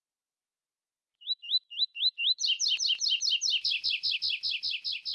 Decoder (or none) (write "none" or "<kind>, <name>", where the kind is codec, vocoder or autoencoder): none